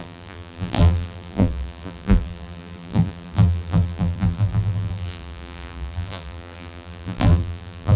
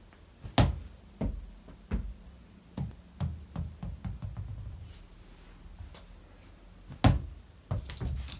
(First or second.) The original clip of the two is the second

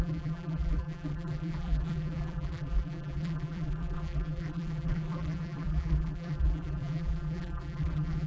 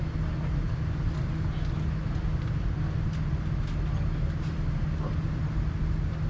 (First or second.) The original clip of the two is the second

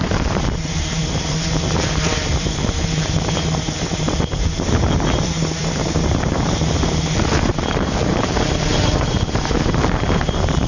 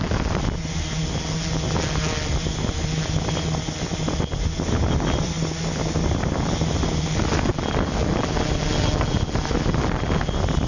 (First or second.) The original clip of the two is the second